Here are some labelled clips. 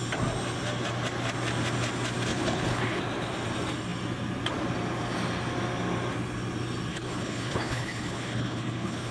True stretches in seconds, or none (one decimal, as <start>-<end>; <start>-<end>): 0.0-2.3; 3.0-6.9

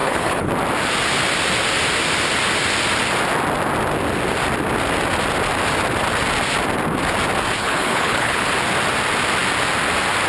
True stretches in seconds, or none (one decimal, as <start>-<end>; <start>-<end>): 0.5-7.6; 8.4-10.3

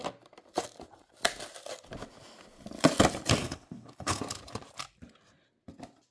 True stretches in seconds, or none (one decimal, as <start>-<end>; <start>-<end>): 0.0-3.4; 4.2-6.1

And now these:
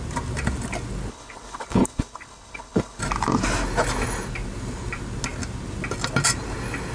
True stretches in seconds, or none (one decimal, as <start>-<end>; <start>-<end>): 0.0-1.1; 3.0-6.9

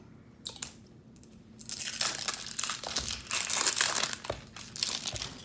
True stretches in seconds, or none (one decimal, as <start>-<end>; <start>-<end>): 0.0-5.4

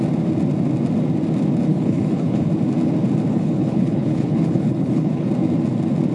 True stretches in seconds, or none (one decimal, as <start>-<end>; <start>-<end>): 0.0-1.7; 2.5-3.3; 5.3-6.1

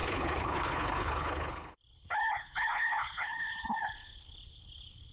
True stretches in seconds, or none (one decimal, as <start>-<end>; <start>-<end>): none